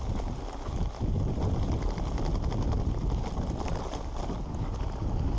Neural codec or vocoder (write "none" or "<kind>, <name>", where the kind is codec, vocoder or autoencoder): none